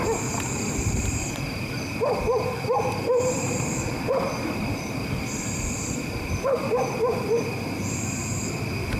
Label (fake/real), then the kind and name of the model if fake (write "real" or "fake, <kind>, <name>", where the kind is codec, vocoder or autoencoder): fake, vocoder, BigVGAN v2